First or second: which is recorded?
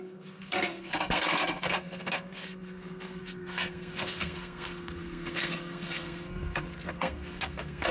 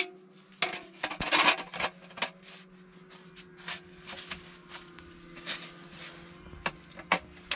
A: second